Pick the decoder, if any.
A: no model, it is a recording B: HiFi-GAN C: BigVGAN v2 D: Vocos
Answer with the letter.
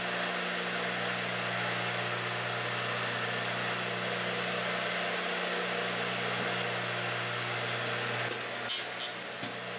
A